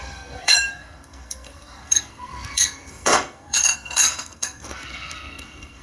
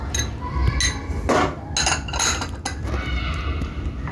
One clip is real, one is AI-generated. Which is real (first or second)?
second